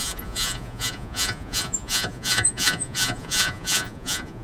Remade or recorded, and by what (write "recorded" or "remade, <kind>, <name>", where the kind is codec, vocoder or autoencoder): remade, vocoder, Vocos